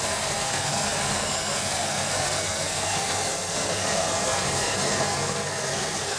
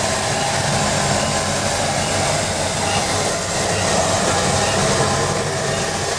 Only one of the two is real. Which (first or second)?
second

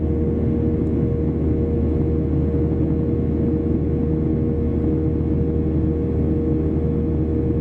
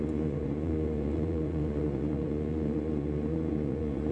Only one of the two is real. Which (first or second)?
first